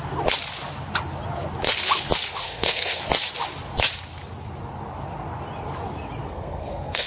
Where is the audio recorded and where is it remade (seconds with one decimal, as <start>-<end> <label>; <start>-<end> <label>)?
0.0-2.4 recorded; 2.4-3.0 remade; 3.0-6.3 recorded; 6.3-7.1 remade